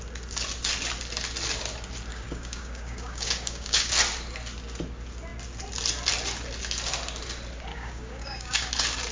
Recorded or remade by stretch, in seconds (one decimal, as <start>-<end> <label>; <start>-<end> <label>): 0.0-2.1 recorded; 2.1-3.9 remade; 3.9-7.7 recorded; 7.7-8.7 remade; 8.7-9.1 recorded